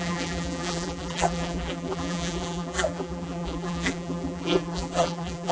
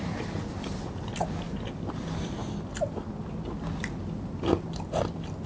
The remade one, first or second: first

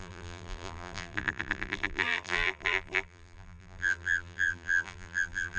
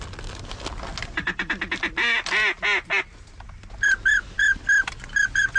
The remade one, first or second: first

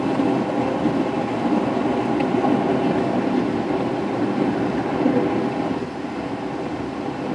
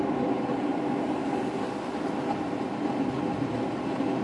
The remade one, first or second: first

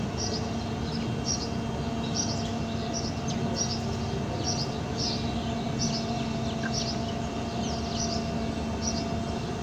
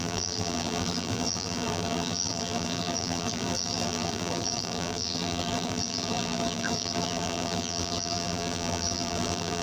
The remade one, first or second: second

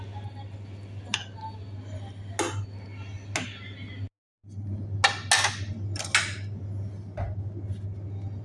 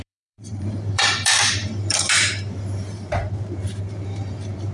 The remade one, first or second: second